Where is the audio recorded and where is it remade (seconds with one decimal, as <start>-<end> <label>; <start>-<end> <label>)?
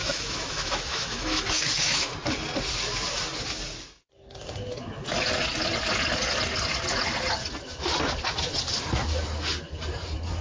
0.0-2.1 remade; 2.1-10.4 recorded